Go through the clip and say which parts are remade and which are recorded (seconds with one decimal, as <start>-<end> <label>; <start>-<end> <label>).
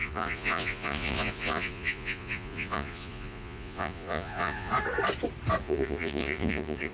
0.0-4.7 remade; 4.7-5.6 recorded; 5.6-6.9 remade